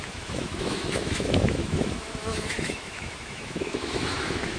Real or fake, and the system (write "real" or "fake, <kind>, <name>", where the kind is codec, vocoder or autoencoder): fake, autoencoder, DAC-VAE